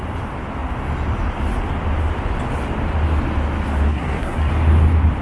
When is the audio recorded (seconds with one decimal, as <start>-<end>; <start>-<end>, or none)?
0.0-3.9; 4.5-5.2